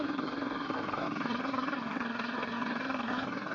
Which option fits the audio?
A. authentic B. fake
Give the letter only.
B